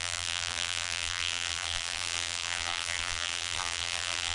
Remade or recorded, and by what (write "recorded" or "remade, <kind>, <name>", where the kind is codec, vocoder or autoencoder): remade, vocoder, BigVGAN v2